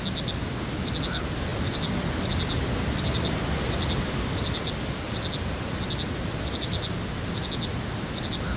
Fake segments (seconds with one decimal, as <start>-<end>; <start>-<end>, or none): none

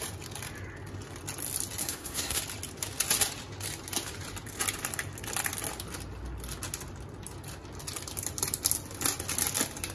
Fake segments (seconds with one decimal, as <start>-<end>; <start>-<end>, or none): 1.8-2.4

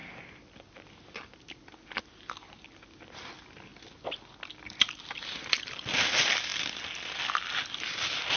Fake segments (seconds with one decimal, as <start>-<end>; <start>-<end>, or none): none

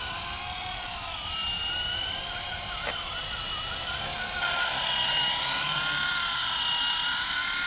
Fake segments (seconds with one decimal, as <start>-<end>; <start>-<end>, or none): none